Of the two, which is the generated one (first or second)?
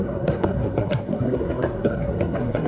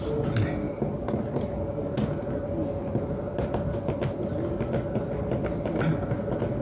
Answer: first